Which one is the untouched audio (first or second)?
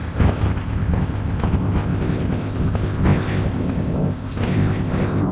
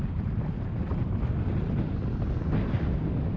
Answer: second